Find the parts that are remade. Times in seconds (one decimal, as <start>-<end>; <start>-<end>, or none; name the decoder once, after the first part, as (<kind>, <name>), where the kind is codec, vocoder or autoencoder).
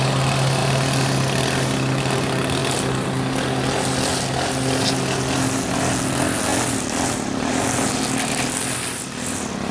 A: none